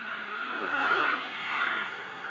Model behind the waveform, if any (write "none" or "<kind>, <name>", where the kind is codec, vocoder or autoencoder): codec, SNAC